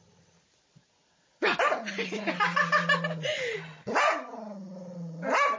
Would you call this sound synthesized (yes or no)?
no